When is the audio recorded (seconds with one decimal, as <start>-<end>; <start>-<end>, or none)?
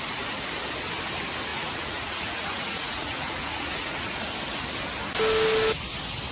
0.0-1.5; 4.2-6.3